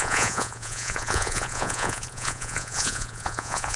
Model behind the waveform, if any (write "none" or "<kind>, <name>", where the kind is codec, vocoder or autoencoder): vocoder, Vocos